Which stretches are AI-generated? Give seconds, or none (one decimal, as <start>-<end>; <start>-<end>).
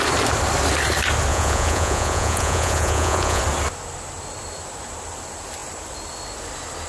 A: 1.3-3.4